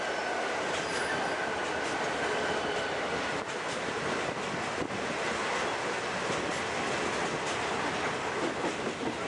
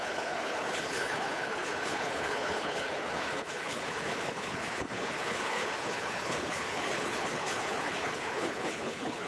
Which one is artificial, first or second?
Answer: second